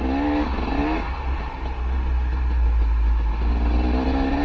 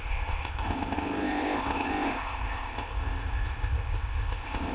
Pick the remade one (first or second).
second